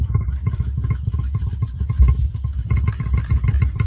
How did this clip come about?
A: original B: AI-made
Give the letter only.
A